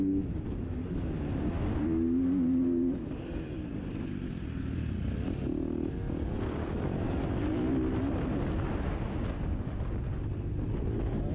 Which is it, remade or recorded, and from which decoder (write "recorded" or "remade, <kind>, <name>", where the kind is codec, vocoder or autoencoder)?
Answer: recorded